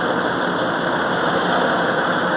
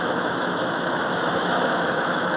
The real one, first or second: first